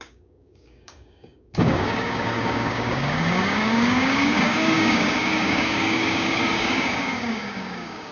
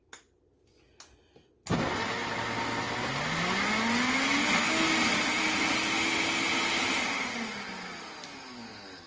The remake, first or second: first